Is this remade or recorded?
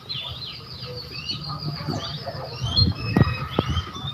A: recorded